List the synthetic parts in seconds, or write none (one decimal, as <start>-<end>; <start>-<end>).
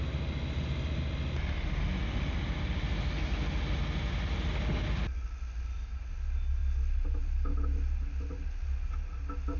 none